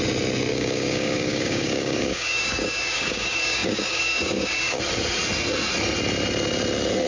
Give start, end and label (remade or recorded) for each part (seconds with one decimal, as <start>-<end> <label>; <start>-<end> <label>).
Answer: 0.0-0.5 recorded; 0.5-4.8 remade; 4.8-7.1 recorded